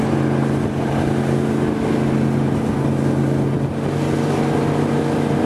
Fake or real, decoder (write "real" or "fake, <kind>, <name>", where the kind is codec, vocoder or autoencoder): real